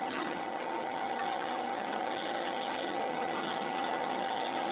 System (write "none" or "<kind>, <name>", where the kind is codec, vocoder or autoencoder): vocoder, HiFi-GAN